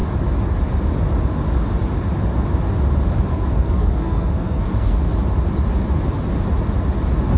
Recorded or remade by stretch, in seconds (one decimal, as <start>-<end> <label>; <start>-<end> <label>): 0.0-3.3 recorded; 3.3-5.1 remade; 5.1-7.4 recorded

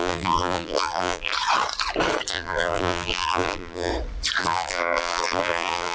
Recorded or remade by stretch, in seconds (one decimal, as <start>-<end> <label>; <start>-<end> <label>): 0.0-1.3 remade; 1.3-2.3 recorded; 2.3-3.9 remade; 3.9-4.4 recorded; 4.4-5.9 remade

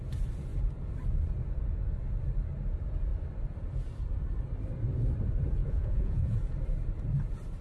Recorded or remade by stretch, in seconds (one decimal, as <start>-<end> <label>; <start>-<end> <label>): 0.0-5.6 recorded; 5.6-6.4 remade; 6.4-7.6 recorded

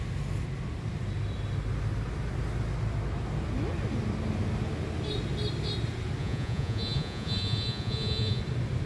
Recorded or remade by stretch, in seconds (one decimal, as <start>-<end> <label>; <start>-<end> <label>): 0.0-6.2 recorded; 6.2-8.4 remade; 8.4-8.9 recorded

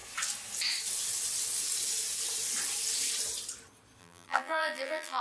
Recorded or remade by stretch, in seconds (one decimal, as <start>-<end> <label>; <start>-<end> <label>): 0.0-4.0 recorded; 4.0-5.2 remade

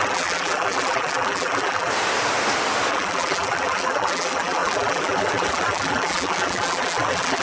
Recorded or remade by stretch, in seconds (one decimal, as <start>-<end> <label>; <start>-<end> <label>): 0.0-1.9 remade; 1.9-2.9 recorded; 2.9-7.4 remade

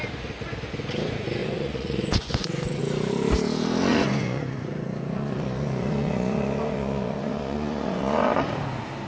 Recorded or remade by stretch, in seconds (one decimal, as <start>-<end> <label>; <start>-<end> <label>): 0.0-1.4 recorded; 1.4-2.8 remade; 2.8-3.9 recorded; 3.9-8.5 remade; 8.5-9.1 recorded